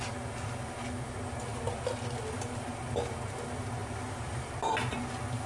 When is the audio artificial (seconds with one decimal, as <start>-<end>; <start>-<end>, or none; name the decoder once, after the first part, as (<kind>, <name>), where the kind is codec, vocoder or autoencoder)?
none